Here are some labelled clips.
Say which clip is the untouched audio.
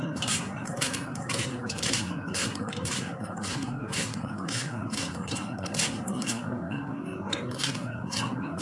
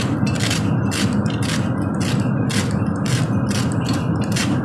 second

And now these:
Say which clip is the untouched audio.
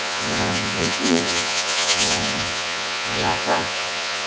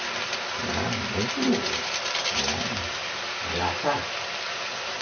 second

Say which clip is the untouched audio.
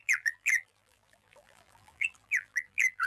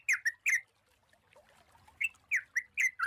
second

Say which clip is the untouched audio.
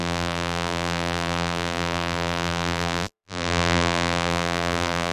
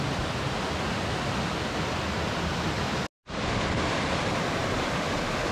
second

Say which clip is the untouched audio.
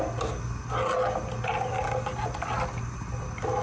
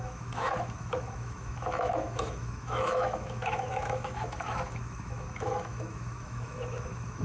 first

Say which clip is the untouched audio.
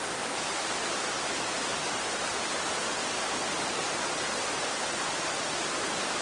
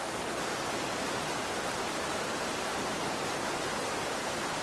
second